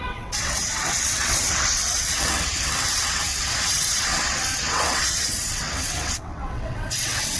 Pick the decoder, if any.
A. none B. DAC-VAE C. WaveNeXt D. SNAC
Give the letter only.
C